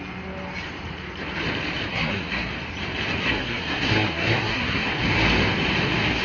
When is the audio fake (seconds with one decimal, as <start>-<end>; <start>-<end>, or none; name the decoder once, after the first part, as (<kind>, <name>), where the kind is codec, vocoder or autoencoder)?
1.9-2.5 (codec, SNAC); 3.2-4.9